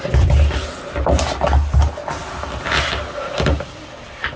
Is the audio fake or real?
fake